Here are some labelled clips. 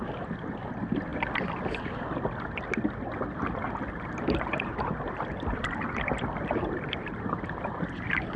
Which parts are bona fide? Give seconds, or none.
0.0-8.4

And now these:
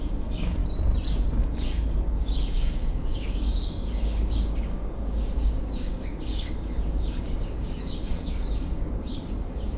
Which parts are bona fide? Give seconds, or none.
0.6-1.4